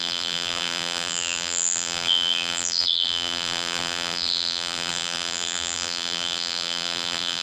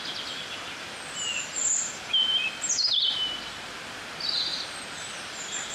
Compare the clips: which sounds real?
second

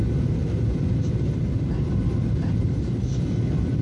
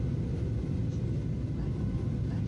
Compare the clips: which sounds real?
second